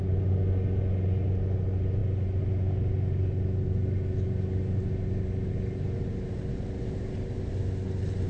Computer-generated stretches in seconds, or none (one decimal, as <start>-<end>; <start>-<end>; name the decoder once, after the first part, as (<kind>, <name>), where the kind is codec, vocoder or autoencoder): none